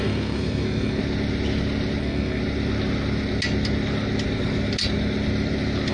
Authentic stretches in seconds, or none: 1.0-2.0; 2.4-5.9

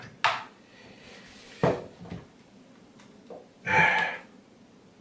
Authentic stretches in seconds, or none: 0.0-5.0

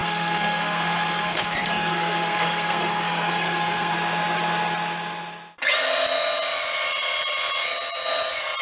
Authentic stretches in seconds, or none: 3.9-8.6

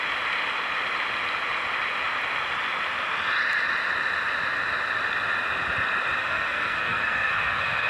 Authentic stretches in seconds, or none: 0.0-6.2

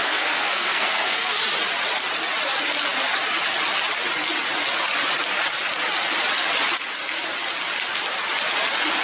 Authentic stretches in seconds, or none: 1.4-9.0

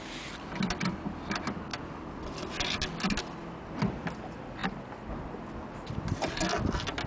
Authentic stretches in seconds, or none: 0.0-7.1

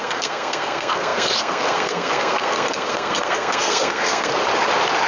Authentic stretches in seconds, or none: 4.3-5.1

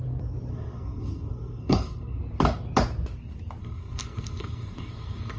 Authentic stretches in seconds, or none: 0.0-0.5; 2.2-3.6